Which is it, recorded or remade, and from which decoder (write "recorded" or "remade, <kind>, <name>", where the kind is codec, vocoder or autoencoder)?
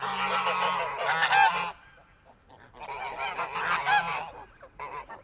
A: recorded